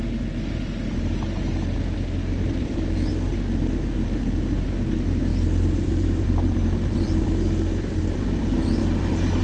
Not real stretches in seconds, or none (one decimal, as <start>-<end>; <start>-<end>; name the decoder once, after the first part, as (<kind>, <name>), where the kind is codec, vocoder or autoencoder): 2.3-3.1 (vocoder, BigVGAN v2); 5.3-8.4; 8.8-9.4